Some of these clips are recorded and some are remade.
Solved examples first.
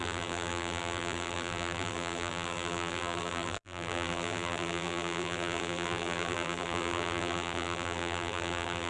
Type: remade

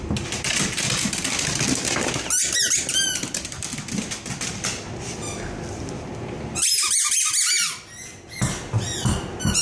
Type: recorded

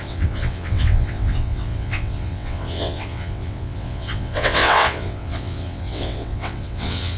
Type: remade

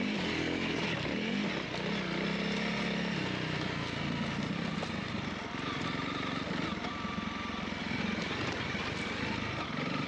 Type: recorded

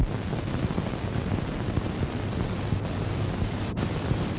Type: recorded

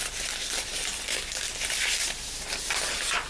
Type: recorded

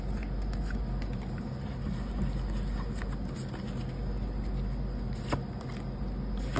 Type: recorded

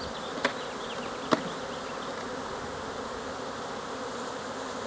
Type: recorded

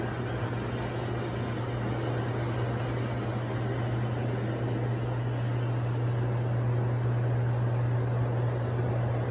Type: recorded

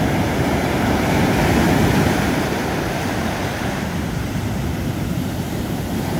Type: remade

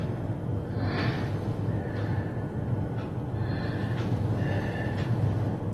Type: recorded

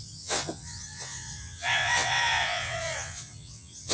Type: remade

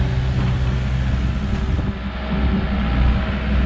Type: recorded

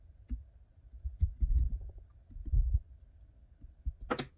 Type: recorded